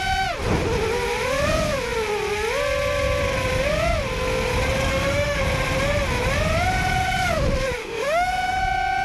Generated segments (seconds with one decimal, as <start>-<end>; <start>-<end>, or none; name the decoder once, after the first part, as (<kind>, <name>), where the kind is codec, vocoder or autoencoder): 4.9-5.4 (autoencoder, DAC-VAE); 7.8-8.6